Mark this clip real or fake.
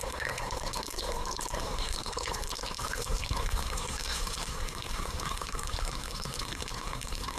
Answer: fake